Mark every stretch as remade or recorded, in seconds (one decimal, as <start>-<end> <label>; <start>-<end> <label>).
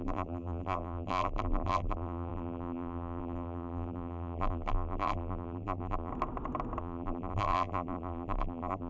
0.0-6.1 remade; 6.1-6.8 recorded; 6.8-8.9 remade